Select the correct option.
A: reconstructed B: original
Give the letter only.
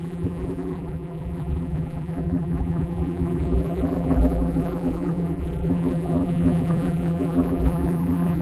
A